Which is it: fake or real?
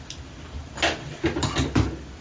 real